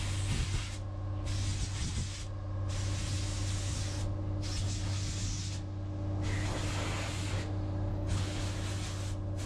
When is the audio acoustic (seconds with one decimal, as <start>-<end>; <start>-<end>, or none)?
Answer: 0.0-7.9; 8.4-9.5